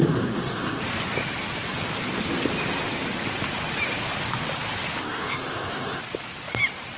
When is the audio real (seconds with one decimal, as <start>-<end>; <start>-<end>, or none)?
0.8-5.0; 6.0-7.0